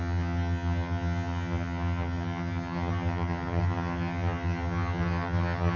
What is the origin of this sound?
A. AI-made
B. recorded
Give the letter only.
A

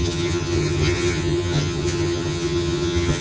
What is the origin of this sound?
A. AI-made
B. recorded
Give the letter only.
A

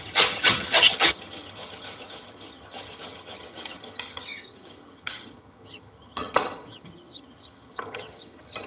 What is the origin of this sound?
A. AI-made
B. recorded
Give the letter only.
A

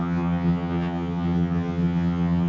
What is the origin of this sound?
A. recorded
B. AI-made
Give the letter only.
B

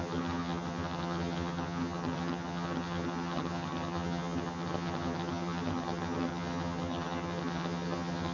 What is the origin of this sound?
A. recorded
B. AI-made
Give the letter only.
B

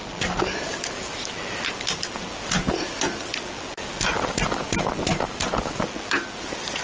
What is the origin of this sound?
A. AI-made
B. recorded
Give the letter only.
B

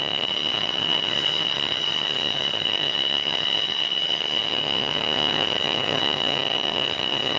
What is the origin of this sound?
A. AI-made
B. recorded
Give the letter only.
A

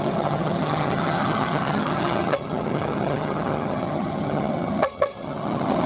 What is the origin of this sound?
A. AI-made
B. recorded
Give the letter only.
A